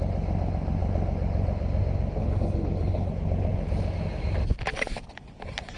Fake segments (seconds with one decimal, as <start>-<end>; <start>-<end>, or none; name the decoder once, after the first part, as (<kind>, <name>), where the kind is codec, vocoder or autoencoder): 2.2-3.1 (codec, HILCodec)